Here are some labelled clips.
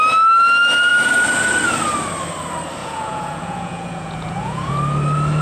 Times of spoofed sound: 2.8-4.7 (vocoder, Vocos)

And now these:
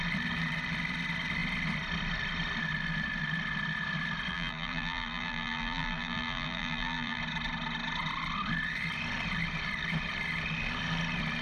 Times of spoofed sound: 4.3-7.2 (vocoder, BigVGAN v2)

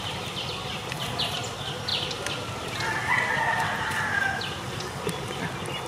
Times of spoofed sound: none